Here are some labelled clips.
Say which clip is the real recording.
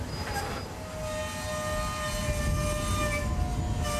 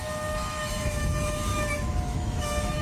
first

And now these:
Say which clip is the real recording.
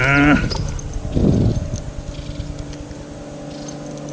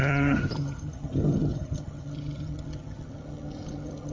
first